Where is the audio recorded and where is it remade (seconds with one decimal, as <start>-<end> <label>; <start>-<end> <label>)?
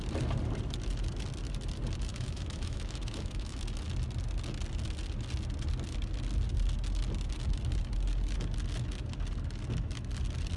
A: 0.0-2.1 recorded; 2.1-3.6 remade; 3.6-10.6 recorded